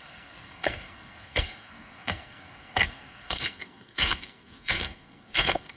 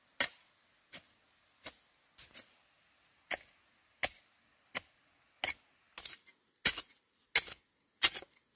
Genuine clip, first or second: second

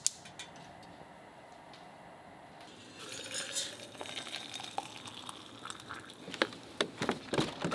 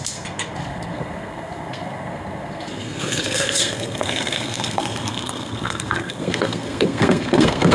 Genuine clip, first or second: first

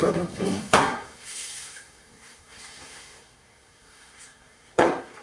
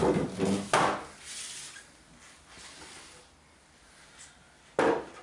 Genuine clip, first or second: second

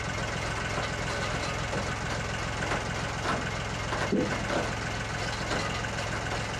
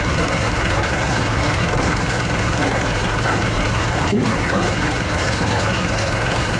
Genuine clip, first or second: first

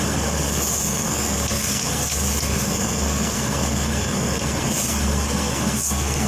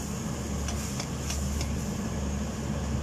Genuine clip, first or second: second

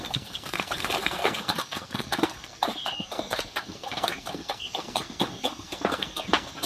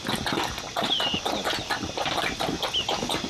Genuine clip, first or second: second